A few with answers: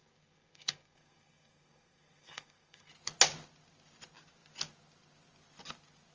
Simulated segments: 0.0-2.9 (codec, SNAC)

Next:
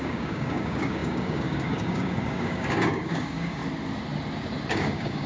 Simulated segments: 0.0-3.6 (codec, DAC); 4.7-5.3